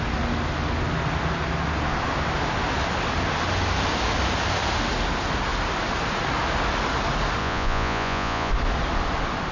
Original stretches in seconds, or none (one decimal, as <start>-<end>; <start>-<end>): 0.0-7.4; 8.5-9.5

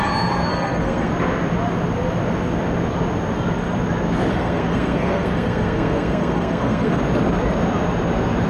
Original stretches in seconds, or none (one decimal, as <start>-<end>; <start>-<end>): 0.0-0.5; 1.1-4.3; 7.0-8.5

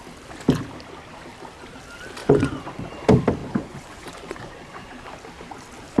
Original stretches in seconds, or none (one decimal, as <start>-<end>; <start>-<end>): 0.0-2.2; 2.9-3.4; 5.1-6.0

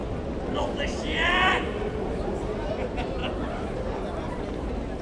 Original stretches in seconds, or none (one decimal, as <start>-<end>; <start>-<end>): 0.0-5.0